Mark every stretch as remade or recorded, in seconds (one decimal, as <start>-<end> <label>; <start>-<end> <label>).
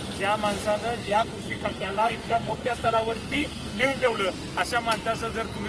0.0-1.0 recorded; 1.0-4.2 remade; 4.2-5.7 recorded